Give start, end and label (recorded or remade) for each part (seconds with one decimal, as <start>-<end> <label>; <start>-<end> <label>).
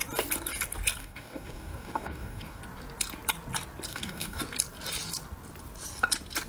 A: 0.0-1.0 recorded; 1.0-2.6 remade; 2.6-3.9 recorded; 3.9-4.4 remade; 4.4-6.5 recorded